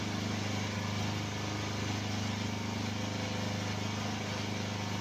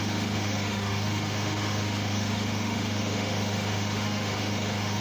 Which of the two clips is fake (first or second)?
second